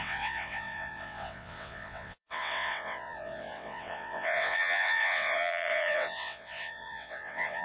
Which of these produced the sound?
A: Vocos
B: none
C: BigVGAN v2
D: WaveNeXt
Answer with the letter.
D